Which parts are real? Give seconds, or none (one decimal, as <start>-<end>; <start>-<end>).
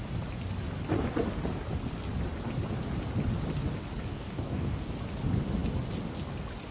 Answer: 0.0-4.1; 4.9-6.7